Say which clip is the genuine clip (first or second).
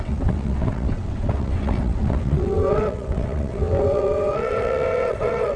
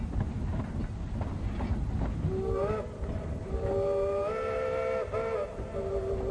second